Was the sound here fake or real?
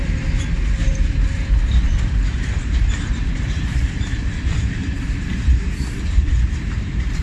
fake